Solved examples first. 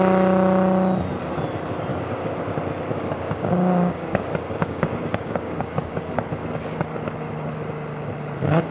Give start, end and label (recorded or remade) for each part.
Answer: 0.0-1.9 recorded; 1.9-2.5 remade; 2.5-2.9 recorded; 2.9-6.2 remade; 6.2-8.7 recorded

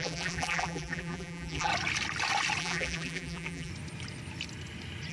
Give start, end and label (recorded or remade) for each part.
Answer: 0.0-1.7 remade; 1.7-2.6 recorded; 2.6-3.7 remade; 3.7-5.1 recorded

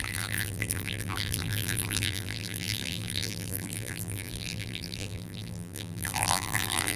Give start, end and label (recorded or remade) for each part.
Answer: 0.0-7.0 remade

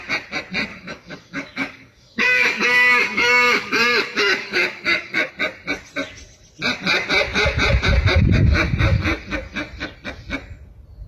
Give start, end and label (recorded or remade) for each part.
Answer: 0.0-0.7 recorded; 0.7-5.3 remade; 5.3-11.1 recorded

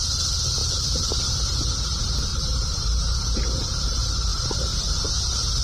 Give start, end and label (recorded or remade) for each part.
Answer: 0.0-0.6 recorded; 0.6-1.2 remade; 1.2-2.3 recorded; 2.3-3.5 remade; 3.5-5.6 recorded

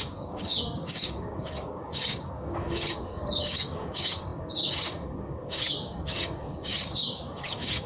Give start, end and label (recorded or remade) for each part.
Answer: 0.0-7.9 remade

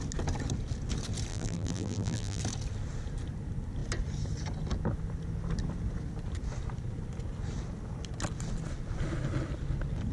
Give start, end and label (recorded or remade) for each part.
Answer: 0.0-1.3 recorded; 1.3-2.4 remade; 2.4-10.1 recorded